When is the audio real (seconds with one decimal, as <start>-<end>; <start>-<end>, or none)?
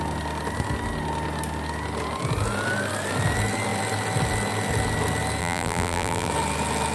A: 0.0-5.4; 6.3-6.9